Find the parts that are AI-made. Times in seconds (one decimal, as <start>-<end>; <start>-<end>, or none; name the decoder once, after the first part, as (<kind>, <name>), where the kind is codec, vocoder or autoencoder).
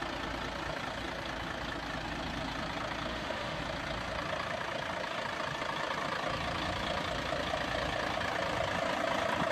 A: 3.1-3.6 (autoencoder, DAC-VAE)